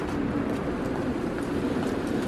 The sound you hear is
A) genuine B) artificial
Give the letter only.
A